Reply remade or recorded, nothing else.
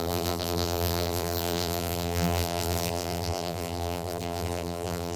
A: remade